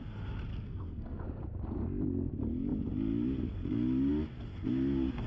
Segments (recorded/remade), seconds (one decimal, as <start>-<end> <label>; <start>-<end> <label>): 0.0-0.5 recorded; 0.5-1.2 remade; 1.2-5.3 recorded